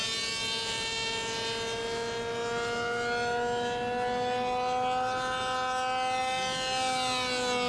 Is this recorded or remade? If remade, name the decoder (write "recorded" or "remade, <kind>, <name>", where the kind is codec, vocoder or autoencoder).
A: recorded